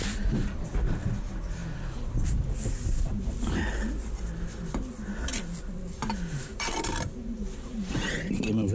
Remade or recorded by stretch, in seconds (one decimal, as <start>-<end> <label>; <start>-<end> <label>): 0.0-6.5 recorded; 6.5-8.1 remade; 8.1-8.7 recorded